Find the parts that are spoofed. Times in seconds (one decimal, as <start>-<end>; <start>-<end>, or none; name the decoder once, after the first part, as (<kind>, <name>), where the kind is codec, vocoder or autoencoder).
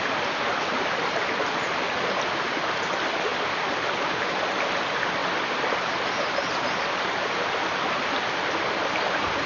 none